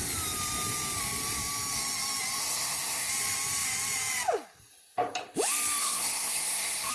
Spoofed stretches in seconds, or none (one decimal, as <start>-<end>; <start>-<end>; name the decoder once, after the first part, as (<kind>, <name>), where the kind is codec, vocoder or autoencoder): 2.4-3.1 (codec, SNAC); 5.8-6.9